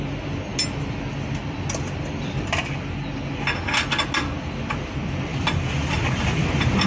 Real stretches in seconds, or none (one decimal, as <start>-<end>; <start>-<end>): 0.0-5.3; 6.0-6.9